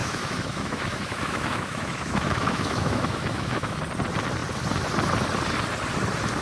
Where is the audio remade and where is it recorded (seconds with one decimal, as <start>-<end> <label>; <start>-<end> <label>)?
0.0-3.8 remade; 3.8-6.4 recorded